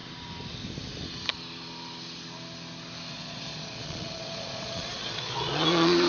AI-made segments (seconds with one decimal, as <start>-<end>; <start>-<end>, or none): 3.1-6.1